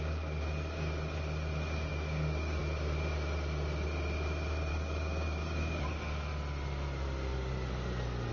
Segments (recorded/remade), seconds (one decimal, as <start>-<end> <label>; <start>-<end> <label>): 0.0-1.9 recorded; 1.9-2.6 remade; 2.6-4.7 recorded; 4.7-5.8 remade; 5.8-8.3 recorded

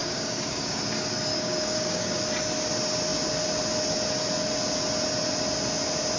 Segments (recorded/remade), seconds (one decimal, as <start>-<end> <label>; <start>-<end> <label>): 0.0-0.8 remade; 0.8-1.3 recorded; 1.3-2.2 remade; 2.2-6.2 recorded

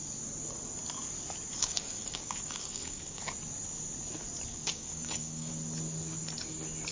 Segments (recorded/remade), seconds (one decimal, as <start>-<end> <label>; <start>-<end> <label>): 0.0-1.6 recorded; 1.6-3.2 remade; 3.2-4.5 recorded; 4.5-5.5 remade; 5.5-6.9 recorded